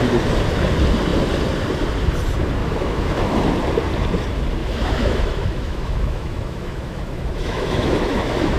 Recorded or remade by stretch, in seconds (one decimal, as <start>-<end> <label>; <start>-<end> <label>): 0.0-2.6 recorded; 2.6-3.4 remade; 3.4-4.6 recorded; 4.6-8.6 remade

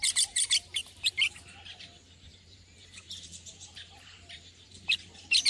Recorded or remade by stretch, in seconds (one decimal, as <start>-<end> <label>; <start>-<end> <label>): 0.0-0.8 recorded; 0.8-1.3 remade; 1.3-2.3 recorded; 2.3-5.0 remade; 5.0-5.5 recorded

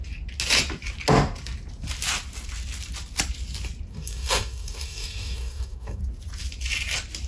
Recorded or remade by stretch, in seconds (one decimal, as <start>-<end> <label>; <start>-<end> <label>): 0.0-3.9 recorded; 3.9-6.0 remade; 6.0-7.3 recorded

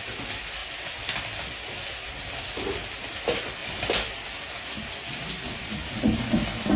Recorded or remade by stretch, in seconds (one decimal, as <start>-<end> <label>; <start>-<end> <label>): 0.0-6.8 recorded

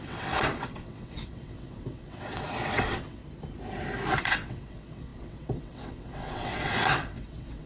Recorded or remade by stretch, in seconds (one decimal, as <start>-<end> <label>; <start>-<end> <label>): 0.0-3.2 remade; 3.2-4.2 recorded; 4.2-7.7 remade

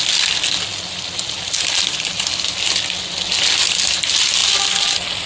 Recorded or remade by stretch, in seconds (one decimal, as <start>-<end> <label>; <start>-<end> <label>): 0.0-5.3 recorded

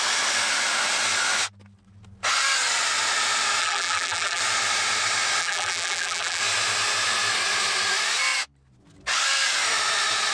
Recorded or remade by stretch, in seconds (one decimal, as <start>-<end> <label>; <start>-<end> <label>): 0.0-3.6 recorded; 3.6-4.4 remade; 4.4-5.4 recorded; 5.4-6.4 remade; 6.4-10.3 recorded

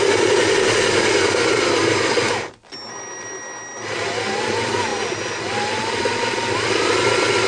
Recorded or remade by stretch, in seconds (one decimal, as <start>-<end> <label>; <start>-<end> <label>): 0.0-7.5 recorded